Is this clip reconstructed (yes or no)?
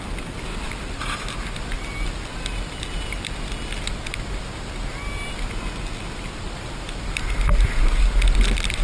no